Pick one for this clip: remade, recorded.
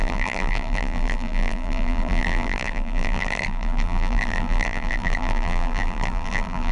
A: remade